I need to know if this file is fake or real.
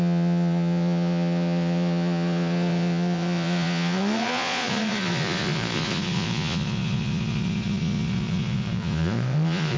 fake